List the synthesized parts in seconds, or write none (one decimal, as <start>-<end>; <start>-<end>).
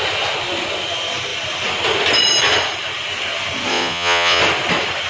3.7-4.4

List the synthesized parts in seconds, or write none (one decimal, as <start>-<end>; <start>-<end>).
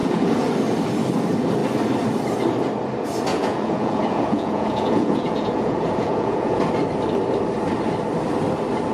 0.0-0.5; 3.3-6.6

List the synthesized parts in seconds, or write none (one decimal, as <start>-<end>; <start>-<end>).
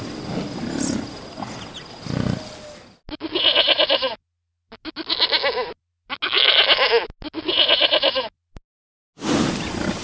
none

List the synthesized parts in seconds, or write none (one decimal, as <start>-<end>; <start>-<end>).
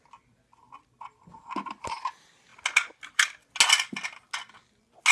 none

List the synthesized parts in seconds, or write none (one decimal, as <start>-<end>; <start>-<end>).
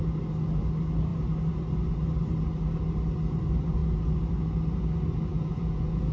5.3-6.1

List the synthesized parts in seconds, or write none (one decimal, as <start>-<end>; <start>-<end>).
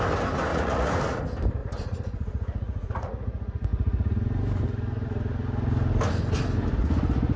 0.5-1.2; 1.6-3.1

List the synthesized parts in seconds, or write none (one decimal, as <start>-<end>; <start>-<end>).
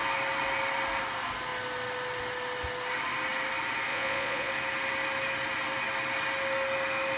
3.9-4.5